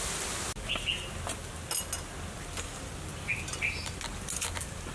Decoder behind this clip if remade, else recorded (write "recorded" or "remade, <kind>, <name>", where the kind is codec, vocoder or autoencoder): recorded